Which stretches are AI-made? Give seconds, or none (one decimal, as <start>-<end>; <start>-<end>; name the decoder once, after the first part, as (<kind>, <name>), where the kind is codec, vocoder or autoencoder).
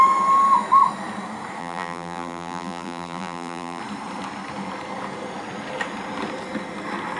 1.6-3.8 (vocoder, BigVGAN v2)